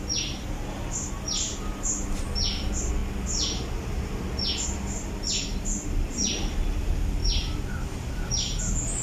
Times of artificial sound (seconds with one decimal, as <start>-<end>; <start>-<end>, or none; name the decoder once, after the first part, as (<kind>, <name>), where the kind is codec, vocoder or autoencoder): none

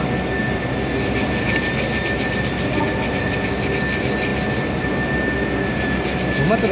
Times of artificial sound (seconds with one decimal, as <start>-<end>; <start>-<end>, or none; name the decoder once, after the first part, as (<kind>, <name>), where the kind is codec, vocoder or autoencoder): none

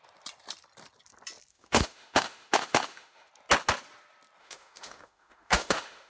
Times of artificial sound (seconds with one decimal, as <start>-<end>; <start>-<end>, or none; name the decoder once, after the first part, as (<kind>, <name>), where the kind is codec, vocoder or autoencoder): 1.5-3.3 (autoencoder, DAC-VAE); 4.4-6.1